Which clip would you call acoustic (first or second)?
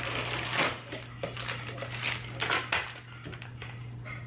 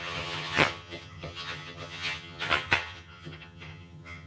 first